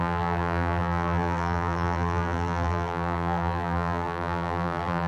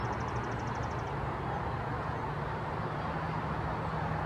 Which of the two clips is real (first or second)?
second